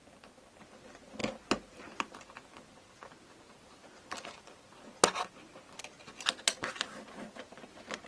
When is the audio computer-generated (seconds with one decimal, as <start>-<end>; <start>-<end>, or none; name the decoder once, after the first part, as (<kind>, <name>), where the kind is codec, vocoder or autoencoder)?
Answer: none